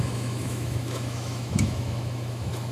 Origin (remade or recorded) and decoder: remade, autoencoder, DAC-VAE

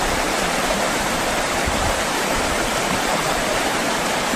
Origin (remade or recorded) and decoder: remade, vocoder, BigVGAN v2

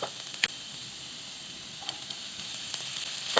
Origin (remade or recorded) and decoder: recorded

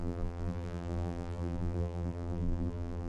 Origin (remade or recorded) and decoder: remade, vocoder, BigVGAN v2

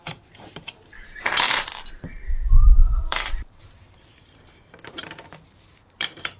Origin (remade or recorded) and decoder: remade, vocoder, BigVGAN v2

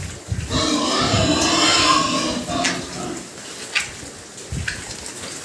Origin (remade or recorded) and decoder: recorded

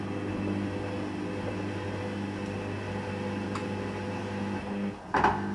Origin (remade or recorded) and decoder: recorded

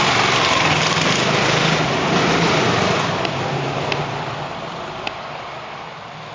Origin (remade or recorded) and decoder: recorded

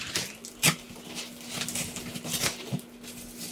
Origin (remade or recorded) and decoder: recorded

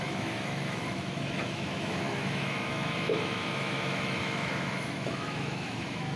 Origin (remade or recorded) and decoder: remade, autoencoder, DAC-VAE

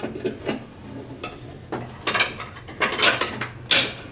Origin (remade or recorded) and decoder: recorded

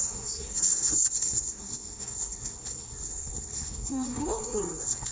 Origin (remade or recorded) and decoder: remade, codec, SNAC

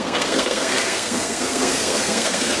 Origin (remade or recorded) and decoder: remade, codec, SNAC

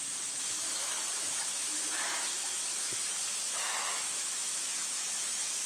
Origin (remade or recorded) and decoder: remade, autoencoder, DAC-VAE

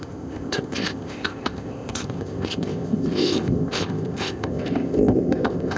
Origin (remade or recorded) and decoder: remade, codec, ZipCodec